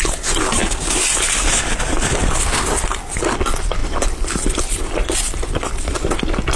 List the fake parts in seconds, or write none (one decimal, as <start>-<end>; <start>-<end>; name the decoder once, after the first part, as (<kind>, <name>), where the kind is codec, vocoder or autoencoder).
3.8-4.6 (vocoder, BigVGAN v2); 5.0-6.1